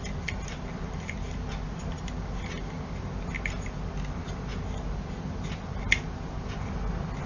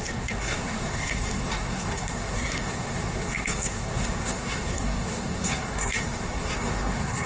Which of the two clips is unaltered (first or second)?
first